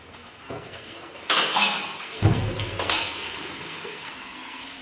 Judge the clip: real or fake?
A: fake